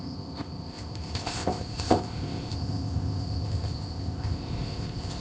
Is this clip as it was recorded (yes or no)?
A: no